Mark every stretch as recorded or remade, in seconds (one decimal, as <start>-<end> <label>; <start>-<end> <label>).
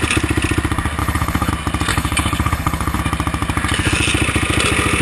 0.0-1.0 recorded; 1.0-1.5 remade; 1.5-1.9 recorded; 1.9-3.0 remade; 3.0-5.0 recorded